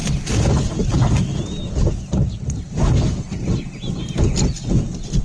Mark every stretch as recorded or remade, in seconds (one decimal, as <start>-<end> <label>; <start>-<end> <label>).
0.0-5.2 recorded